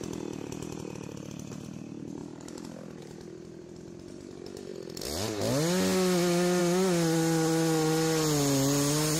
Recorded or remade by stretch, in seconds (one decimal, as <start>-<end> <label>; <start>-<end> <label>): 0.0-9.2 recorded